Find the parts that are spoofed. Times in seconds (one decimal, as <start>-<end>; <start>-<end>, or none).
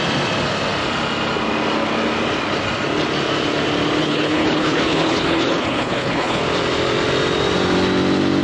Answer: 4.0-6.4